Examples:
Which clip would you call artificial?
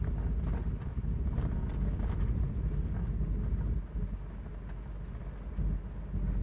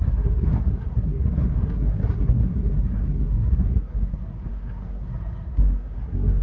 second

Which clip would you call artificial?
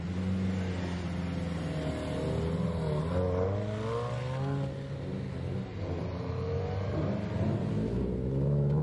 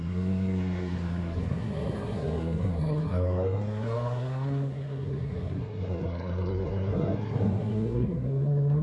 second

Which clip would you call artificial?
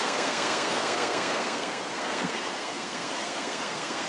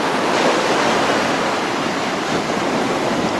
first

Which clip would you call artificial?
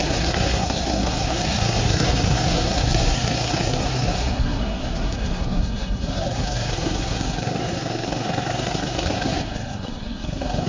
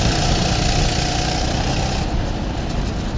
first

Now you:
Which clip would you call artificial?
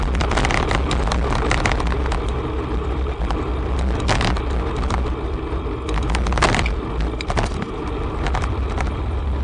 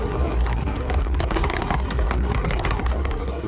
second